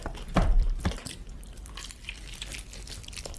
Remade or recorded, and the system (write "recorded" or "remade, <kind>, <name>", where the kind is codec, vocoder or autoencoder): remade, vocoder, BigVGAN v2